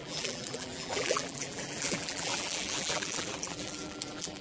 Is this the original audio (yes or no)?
no